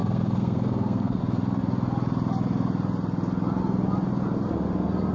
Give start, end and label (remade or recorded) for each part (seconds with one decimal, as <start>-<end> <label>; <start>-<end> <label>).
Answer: 0.0-1.2 remade; 1.2-5.1 recorded